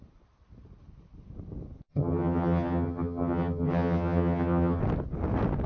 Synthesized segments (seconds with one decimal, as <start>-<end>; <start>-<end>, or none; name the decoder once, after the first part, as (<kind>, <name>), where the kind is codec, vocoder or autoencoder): 1.9-4.8 (vocoder, HiFi-GAN)